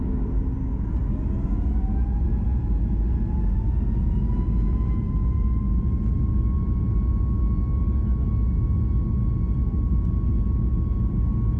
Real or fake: real